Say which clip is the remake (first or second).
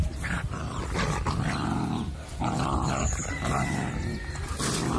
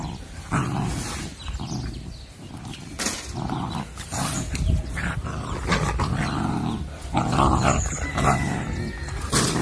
first